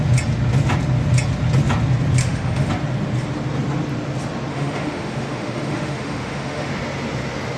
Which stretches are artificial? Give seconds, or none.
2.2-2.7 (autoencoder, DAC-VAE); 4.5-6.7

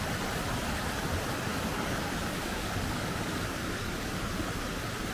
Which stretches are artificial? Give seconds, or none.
1.5-4.2 (codec, DAC)